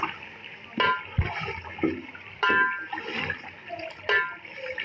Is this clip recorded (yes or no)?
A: yes